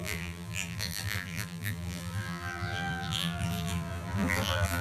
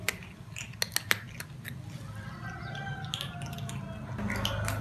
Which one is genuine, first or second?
second